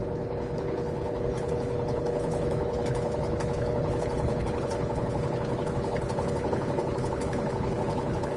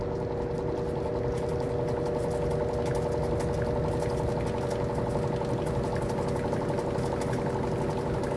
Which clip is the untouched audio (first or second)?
second